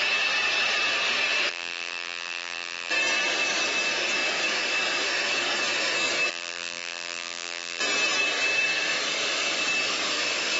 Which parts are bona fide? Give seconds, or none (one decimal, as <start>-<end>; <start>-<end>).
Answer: 0.0-1.5; 2.9-6.3; 7.8-10.6